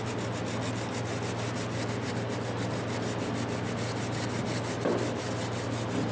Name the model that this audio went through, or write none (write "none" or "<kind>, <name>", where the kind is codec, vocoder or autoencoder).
none